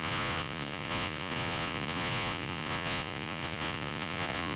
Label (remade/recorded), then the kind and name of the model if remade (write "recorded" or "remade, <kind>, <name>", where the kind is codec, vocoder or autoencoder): remade, vocoder, Vocos